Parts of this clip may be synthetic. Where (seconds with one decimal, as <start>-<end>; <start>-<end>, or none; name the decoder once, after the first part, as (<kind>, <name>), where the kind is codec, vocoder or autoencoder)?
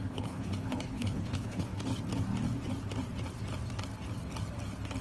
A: 0.0-1.9 (codec, HILCodec)